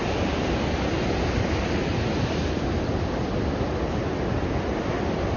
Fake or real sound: real